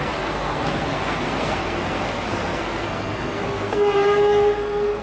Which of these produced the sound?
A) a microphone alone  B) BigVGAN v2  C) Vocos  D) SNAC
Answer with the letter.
D